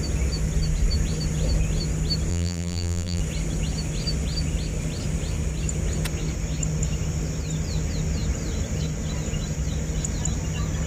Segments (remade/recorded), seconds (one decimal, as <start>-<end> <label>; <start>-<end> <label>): 0.0-2.3 recorded; 2.3-3.2 remade; 3.2-10.9 recorded